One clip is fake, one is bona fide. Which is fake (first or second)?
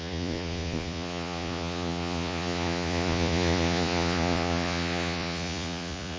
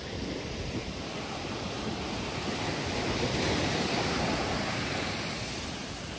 first